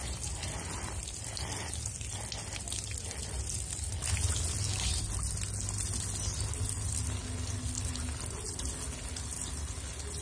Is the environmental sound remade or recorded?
recorded